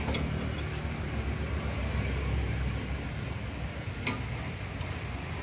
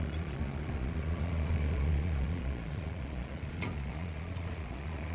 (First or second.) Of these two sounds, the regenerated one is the second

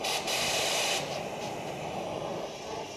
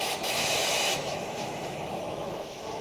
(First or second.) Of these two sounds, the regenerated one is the second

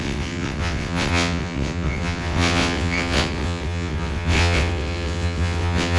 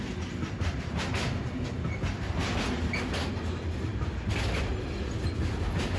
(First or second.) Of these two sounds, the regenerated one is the first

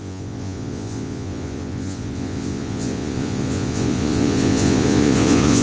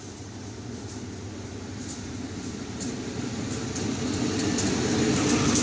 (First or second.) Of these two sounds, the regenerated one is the first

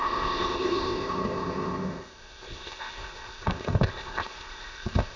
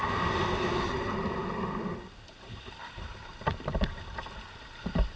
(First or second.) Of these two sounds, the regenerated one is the first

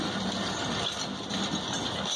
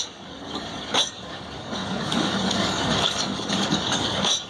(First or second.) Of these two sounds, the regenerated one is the second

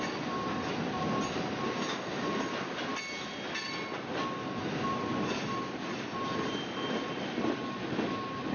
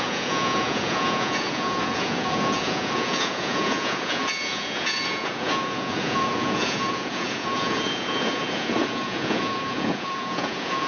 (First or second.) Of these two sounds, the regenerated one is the second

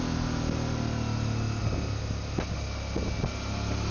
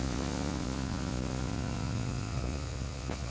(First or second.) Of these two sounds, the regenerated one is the second